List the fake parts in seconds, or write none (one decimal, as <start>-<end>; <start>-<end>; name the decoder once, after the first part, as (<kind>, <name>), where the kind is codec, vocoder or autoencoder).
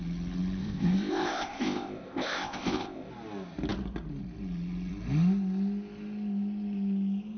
0.6-3.1 (codec, ZipCodec)